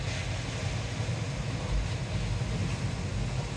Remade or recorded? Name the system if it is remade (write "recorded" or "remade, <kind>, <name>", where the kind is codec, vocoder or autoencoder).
recorded